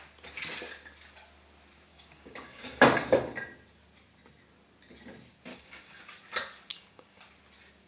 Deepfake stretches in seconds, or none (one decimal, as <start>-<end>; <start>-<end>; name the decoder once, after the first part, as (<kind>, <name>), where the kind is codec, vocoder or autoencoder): 1.9-2.8 (codec, DAC); 5.5-6.0; 6.7-7.2